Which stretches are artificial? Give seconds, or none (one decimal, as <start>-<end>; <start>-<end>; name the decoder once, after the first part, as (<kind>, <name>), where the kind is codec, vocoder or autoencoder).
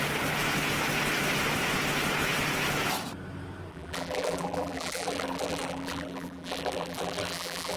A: 3.7-7.8 (vocoder, BigVGAN v2)